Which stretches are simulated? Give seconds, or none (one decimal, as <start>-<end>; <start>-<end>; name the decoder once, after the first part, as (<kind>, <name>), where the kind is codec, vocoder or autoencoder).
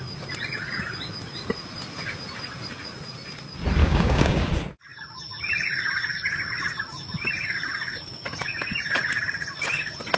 3.8-4.5 (codec, DAC)